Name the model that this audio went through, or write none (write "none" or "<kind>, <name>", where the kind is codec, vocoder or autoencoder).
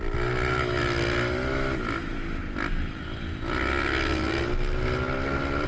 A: none